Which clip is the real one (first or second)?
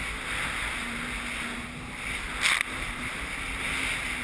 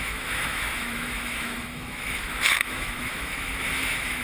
first